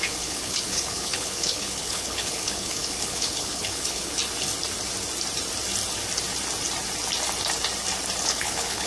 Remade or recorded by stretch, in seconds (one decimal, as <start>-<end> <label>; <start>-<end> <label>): 0.0-4.2 remade; 4.2-8.2 recorded; 8.2-8.9 remade